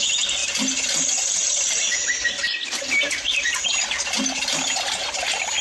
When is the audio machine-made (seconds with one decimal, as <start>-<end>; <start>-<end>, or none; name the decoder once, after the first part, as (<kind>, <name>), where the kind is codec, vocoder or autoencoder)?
none